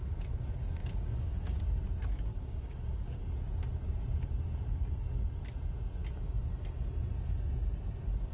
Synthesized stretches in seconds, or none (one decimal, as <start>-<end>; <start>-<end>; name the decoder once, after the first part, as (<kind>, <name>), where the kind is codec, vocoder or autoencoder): 0.8-1.6 (codec, DAC); 2.3-3.2